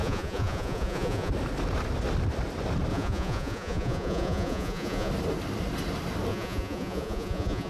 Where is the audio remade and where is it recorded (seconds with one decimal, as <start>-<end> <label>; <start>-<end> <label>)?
0.0-1.3 remade; 1.3-2.9 recorded; 2.9-5.1 remade; 5.1-6.3 recorded; 6.3-7.7 remade